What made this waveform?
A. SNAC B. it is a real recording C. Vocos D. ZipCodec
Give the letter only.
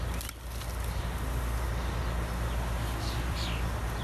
B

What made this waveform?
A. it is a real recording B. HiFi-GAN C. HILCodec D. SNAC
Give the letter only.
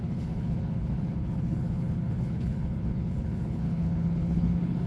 C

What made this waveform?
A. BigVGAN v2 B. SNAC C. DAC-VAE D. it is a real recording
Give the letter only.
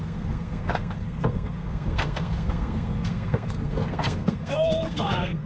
B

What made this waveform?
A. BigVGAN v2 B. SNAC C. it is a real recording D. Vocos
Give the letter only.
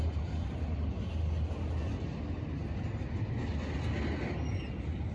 C